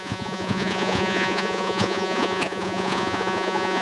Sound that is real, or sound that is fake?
fake